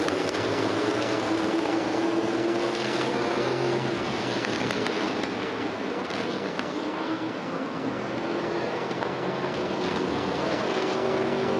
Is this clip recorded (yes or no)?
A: no